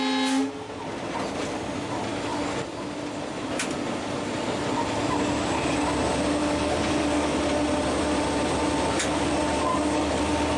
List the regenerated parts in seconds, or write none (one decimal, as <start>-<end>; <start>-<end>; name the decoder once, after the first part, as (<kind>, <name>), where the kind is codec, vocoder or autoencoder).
6.4-7.4 (codec, DAC); 9.7-10.2